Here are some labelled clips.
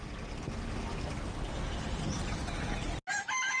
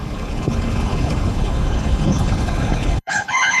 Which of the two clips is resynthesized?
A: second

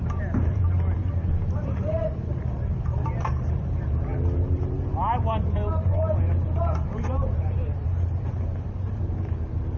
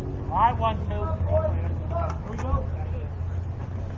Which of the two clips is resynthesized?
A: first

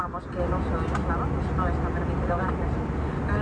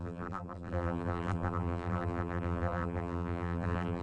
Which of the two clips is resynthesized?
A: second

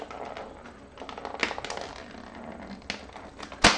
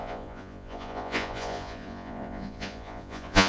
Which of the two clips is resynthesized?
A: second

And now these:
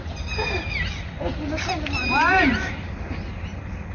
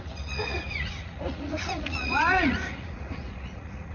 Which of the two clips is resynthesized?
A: second